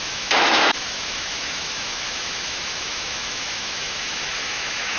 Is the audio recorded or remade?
remade